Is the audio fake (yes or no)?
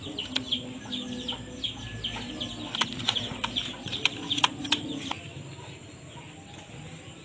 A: no